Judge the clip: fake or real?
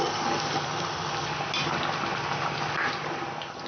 real